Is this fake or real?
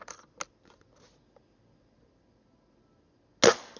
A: real